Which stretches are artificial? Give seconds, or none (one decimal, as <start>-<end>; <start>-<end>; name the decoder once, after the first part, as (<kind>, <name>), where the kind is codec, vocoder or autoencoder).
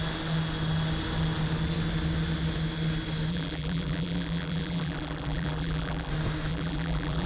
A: 3.3-6.1 (vocoder, BigVGAN v2); 6.5-7.3